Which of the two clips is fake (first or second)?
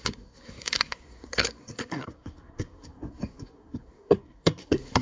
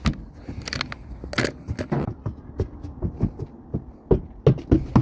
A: first